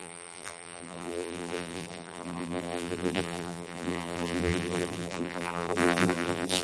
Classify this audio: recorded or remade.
remade